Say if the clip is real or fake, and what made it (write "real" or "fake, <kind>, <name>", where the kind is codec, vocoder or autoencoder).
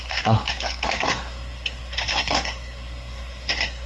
fake, codec, SNAC